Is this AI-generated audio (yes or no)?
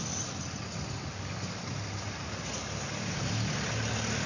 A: no